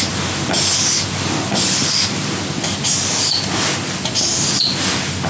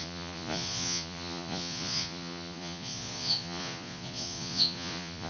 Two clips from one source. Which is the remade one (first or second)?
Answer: second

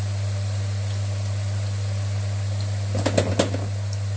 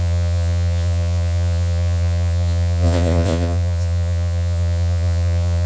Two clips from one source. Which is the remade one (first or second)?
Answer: second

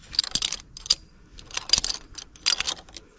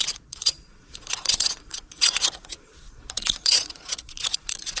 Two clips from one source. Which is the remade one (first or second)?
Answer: second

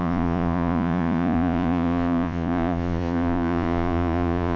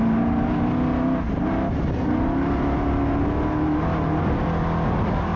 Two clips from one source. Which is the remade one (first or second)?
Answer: first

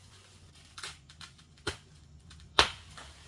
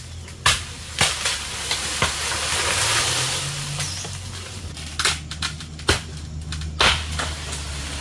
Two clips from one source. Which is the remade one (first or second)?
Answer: first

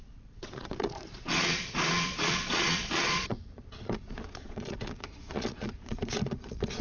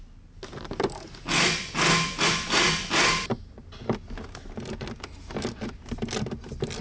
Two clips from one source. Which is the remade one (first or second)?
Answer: first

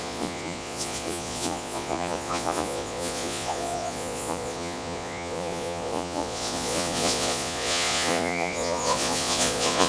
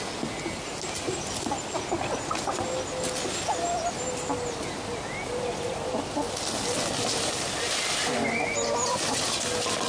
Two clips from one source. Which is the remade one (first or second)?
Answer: first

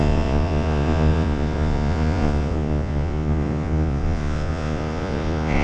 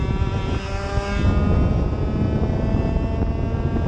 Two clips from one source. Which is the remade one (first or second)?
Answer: first